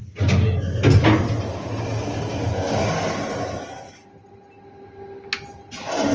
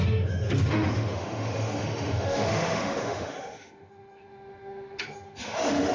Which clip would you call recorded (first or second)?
first